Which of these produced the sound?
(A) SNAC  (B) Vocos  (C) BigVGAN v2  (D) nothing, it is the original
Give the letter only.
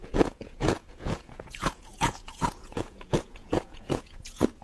B